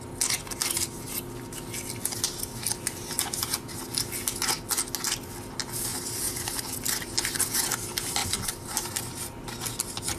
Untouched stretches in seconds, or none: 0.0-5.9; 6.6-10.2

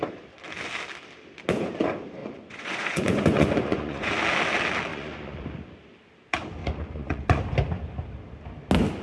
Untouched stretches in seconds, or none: 0.0-2.2; 4.1-4.9; 5.4-6.6; 7.4-9.0

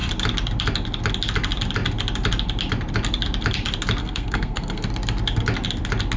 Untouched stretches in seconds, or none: 0.0-4.0; 4.9-6.2

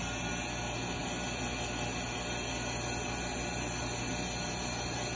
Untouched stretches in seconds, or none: 0.0-5.2

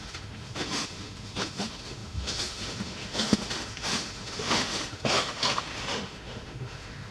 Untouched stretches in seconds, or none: none

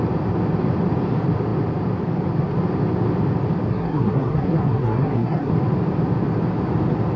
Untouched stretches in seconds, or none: 0.0-3.7; 5.5-7.2